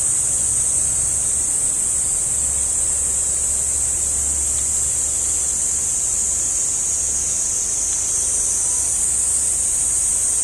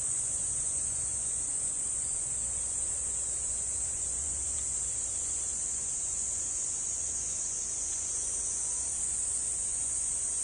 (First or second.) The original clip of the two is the first